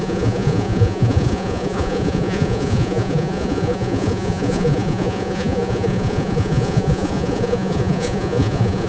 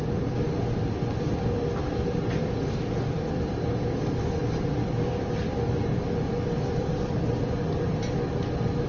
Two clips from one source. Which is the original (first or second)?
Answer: second